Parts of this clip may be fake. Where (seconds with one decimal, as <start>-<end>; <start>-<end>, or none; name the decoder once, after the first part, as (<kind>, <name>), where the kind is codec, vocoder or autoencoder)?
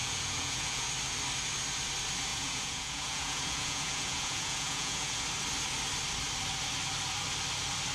0.0-0.9 (vocoder, Vocos); 2.3-5.2